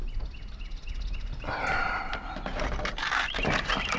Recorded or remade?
recorded